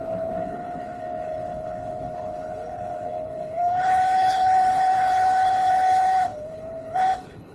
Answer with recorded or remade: remade